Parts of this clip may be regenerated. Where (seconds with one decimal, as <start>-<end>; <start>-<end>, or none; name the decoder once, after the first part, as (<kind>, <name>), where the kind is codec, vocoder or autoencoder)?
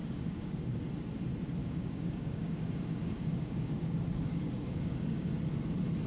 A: 0.0-0.8 (codec, DAC); 1.6-5.3